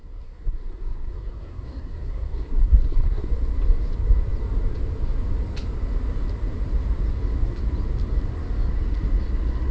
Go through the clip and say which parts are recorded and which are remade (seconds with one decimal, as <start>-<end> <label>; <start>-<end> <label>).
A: 0.0-3.3 remade; 3.3-9.7 recorded